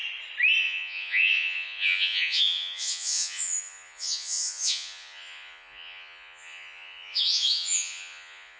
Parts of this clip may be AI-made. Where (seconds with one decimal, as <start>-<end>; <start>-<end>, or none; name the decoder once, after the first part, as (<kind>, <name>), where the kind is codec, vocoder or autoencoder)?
0.6-8.6 (vocoder, Vocos)